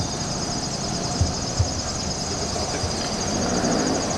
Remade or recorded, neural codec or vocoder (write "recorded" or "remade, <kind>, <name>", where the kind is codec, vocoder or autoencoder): recorded